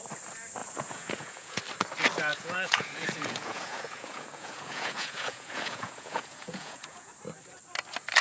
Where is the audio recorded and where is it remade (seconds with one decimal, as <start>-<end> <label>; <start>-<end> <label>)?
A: 0.0-0.6 recorded; 0.6-1.6 remade; 1.6-2.3 recorded; 2.3-7.1 remade; 7.1-8.2 recorded